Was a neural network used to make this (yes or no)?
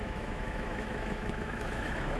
yes